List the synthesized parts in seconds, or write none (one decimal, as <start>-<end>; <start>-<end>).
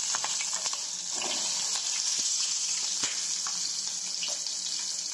2.1-2.8